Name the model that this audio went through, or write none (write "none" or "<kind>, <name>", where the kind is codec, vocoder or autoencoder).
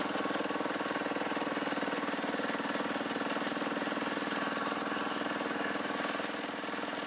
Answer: none